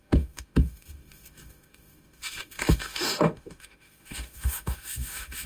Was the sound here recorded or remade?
remade